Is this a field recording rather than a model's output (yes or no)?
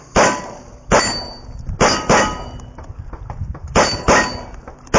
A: yes